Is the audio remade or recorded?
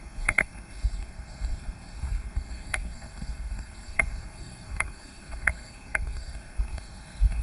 remade